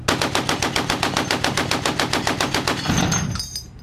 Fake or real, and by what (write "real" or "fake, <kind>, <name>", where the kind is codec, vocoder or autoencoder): real